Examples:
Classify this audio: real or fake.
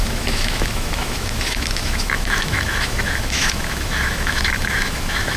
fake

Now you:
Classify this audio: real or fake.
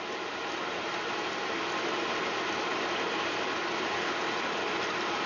real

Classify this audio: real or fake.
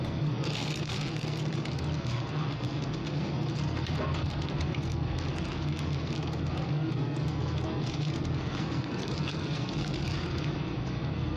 fake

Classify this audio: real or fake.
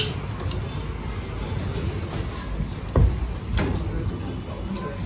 real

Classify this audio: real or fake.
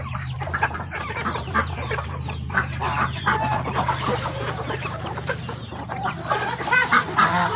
fake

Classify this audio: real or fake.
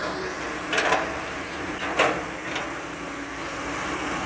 fake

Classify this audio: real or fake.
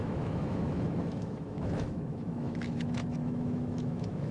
fake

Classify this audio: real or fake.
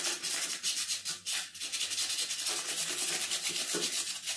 fake